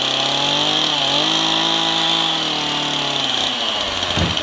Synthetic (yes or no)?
no